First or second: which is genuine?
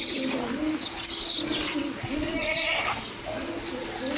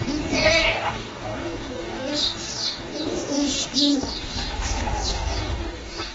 first